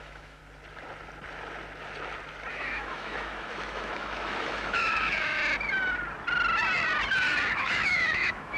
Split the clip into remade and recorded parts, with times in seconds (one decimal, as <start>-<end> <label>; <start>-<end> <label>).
0.0-0.4 remade; 0.4-2.5 recorded; 2.5-5.4 remade; 5.4-7.5 recorded; 7.5-8.6 remade